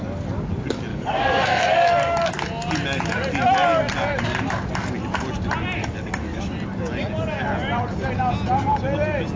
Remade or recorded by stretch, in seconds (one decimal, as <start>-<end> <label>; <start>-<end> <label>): 0.0-0.9 recorded; 0.9-2.3 remade; 2.3-5.8 recorded; 5.8-6.4 remade; 6.4-9.4 recorded